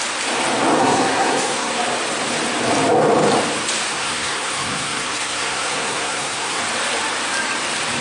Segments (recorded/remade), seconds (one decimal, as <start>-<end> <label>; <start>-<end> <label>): 0.0-0.8 recorded; 0.8-1.8 remade; 1.8-3.9 recorded; 3.9-6.6 remade; 6.6-8.0 recorded